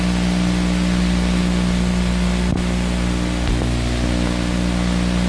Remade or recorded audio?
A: recorded